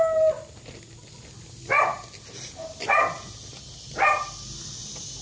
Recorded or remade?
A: recorded